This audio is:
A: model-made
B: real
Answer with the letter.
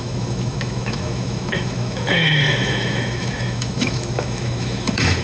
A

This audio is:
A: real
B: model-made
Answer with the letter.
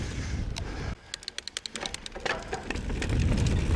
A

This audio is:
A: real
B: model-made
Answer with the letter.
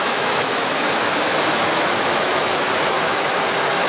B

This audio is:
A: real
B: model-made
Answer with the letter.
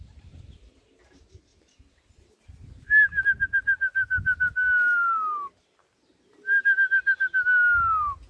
A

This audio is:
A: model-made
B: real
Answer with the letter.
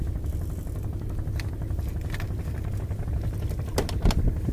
B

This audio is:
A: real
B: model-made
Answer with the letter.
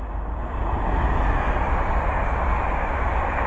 A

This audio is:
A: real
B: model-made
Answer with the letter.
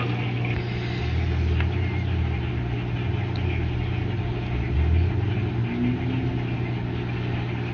A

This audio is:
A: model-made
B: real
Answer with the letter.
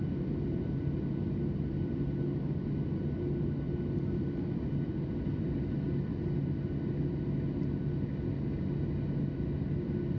B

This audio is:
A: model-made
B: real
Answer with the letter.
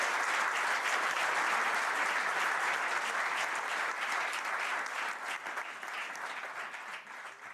B